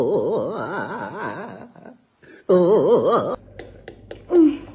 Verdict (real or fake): real